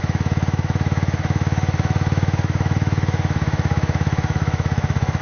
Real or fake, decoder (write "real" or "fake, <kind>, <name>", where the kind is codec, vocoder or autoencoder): fake, autoencoder, DAC-VAE